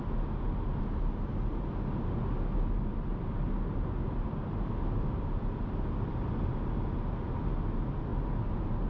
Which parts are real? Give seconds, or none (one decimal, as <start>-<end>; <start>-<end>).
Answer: 0.0-8.9